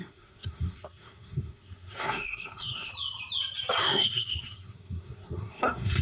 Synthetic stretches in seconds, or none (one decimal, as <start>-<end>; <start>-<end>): 0.0-2.9; 3.8-6.0